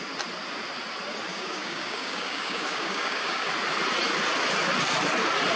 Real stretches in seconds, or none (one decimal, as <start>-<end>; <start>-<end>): 0.0-1.3; 3.5-5.6